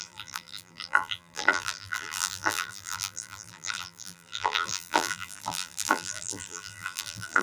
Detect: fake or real fake